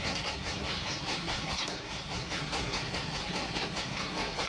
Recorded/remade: remade